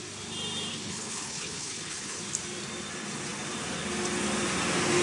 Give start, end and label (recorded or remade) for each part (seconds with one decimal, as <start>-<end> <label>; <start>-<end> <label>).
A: 0.0-0.7 recorded; 0.7-2.2 remade; 2.2-5.0 recorded